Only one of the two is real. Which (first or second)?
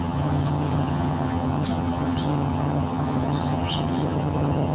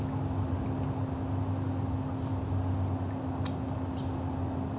second